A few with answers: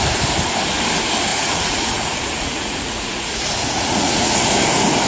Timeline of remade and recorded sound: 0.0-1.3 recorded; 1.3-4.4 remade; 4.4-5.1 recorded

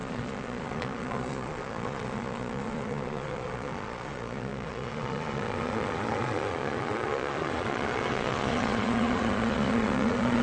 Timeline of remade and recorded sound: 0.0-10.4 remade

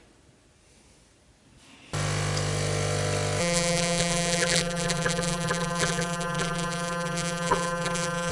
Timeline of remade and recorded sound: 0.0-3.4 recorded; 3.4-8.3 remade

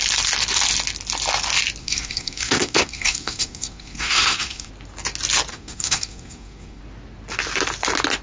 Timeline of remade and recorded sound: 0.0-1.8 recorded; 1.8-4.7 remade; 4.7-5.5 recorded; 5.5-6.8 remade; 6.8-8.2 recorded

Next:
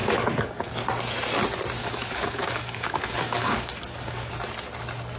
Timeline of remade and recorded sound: 0.0-0.7 remade; 0.7-1.8 recorded; 1.8-4.3 remade; 4.3-5.2 recorded